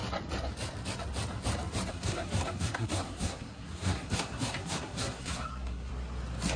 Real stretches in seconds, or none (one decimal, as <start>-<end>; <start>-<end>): 0.0-1.9; 5.9-6.6